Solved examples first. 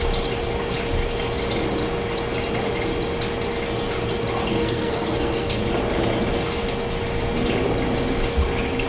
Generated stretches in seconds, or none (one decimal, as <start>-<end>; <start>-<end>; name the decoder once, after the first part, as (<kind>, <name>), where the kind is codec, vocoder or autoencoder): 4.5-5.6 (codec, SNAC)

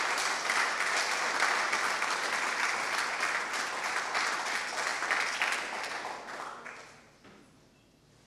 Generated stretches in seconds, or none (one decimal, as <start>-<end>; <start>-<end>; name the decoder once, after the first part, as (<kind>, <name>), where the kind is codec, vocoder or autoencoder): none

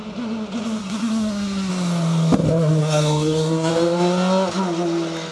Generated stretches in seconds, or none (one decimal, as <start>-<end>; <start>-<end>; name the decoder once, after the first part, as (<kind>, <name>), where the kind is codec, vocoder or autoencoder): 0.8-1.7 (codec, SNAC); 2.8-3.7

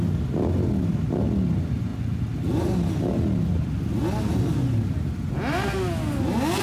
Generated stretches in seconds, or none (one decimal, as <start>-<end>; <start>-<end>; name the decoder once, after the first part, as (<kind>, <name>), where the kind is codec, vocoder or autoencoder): none

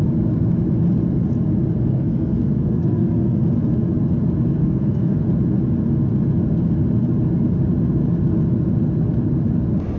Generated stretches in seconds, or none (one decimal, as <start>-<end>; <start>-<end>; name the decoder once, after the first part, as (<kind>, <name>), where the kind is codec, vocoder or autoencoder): 1.9-3.4 (codec, SNAC); 4.6-5.2